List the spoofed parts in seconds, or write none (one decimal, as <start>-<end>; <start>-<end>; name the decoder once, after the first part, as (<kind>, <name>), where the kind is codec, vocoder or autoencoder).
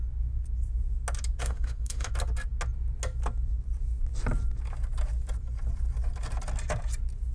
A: 1.4-2.1 (autoencoder, DAC-VAE)